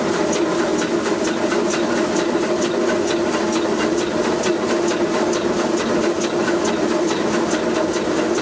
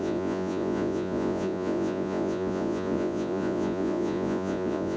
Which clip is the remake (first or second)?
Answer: second